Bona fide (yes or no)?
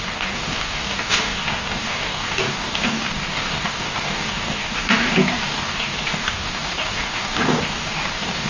no